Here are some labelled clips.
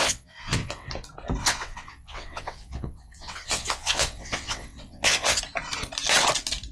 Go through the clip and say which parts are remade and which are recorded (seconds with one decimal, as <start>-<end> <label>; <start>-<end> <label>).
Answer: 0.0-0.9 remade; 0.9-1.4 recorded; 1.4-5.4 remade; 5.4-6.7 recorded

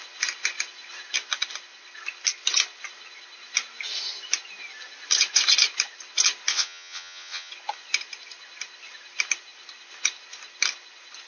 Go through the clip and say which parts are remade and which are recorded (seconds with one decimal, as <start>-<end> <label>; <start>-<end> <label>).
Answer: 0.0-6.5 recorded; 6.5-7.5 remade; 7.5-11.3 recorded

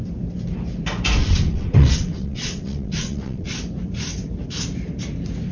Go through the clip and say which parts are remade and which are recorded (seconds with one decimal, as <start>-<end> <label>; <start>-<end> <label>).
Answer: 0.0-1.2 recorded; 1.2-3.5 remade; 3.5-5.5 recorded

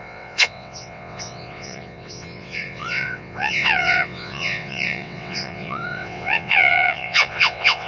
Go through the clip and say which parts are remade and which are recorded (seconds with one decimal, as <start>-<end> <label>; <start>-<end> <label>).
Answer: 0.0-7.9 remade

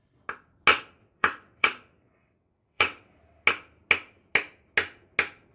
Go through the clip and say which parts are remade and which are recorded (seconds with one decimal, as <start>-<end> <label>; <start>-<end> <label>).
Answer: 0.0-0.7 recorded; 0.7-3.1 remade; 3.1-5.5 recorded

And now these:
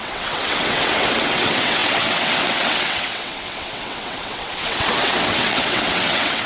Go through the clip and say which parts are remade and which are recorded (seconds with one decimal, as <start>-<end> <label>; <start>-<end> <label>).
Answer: 0.0-6.5 remade

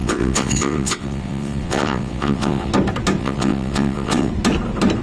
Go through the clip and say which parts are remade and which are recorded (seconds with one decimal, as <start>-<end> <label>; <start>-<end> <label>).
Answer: 0.0-2.7 remade; 2.7-3.2 recorded; 3.2-4.3 remade; 4.3-5.0 recorded

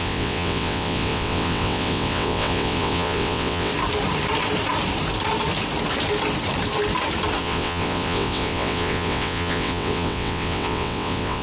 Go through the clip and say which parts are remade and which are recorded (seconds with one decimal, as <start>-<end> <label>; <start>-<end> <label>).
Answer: 0.0-3.7 remade; 3.7-7.4 recorded; 7.4-11.4 remade